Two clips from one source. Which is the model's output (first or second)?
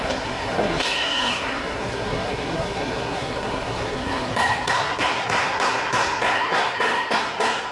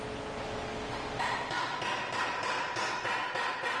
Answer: first